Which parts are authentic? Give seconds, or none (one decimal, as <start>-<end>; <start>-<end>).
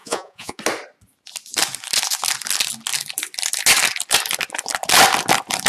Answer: 0.6-5.7